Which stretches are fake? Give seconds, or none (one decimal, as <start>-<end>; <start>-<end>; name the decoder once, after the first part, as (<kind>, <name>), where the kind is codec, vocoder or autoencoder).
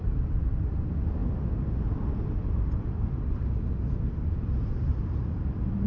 0.0-1.2 (vocoder, BigVGAN v2); 4.7-5.9